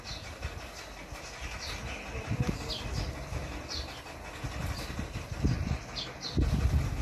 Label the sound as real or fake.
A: real